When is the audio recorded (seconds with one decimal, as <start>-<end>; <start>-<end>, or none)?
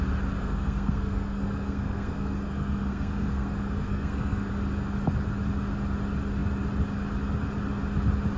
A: 0.0-0.4; 4.5-8.4